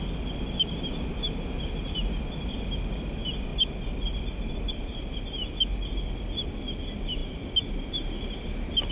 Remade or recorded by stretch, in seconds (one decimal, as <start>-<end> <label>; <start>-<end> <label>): 0.0-8.9 recorded